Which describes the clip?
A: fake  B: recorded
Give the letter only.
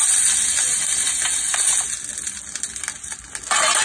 B